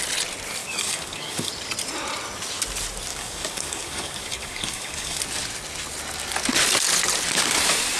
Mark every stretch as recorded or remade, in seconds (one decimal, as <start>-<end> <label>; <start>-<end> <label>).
0.0-0.6 recorded; 0.6-1.5 remade; 1.5-3.1 recorded; 3.1-5.2 remade; 5.2-8.0 recorded